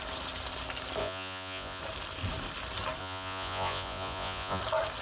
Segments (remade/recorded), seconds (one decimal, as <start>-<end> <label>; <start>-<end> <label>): 0.0-1.0 recorded; 1.0-1.8 remade; 1.8-3.0 recorded; 3.0-4.6 remade; 4.6-5.0 recorded